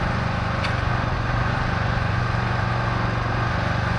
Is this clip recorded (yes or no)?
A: no